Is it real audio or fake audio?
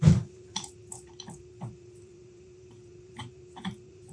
fake